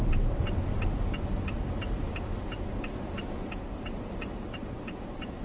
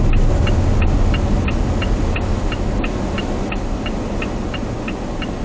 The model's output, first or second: first